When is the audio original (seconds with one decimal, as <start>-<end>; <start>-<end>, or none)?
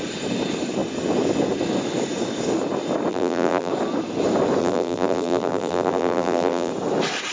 0.0-3.1; 3.7-4.6; 6.7-7.3